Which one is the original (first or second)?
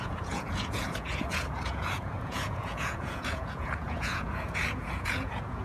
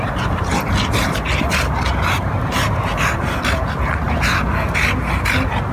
second